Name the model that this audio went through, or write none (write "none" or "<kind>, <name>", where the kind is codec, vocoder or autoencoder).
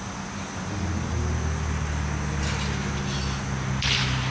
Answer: none